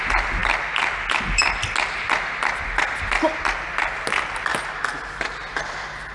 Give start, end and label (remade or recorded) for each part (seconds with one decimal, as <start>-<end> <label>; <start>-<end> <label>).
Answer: 0.0-4.5 recorded; 4.5-5.6 remade; 5.6-6.1 recorded